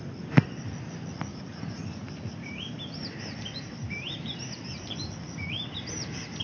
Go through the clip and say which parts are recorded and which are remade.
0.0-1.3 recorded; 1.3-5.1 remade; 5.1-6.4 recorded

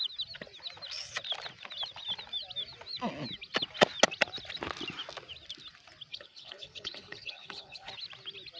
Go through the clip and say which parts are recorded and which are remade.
0.0-6.1 recorded; 6.1-7.9 remade; 7.9-8.6 recorded

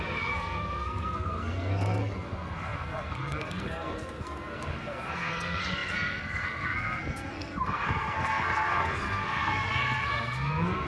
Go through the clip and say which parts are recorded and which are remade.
0.0-10.9 remade

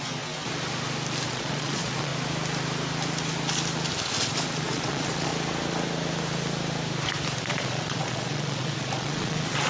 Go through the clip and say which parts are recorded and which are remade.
0.0-1.3 recorded; 1.3-2.1 remade; 2.1-4.6 recorded; 4.6-5.3 remade; 5.3-7.4 recorded; 7.4-9.7 remade